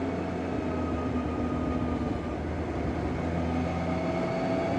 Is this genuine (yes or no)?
yes